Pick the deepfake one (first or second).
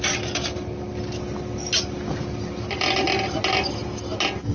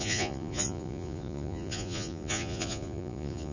second